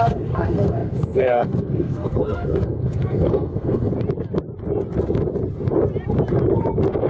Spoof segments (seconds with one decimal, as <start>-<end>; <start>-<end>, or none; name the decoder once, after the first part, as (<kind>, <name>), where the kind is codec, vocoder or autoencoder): 0.0-3.9 (codec, SNAC)